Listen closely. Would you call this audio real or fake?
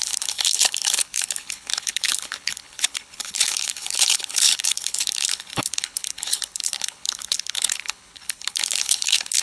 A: fake